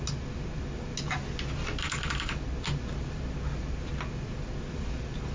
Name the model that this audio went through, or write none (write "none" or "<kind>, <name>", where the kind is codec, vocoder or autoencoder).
none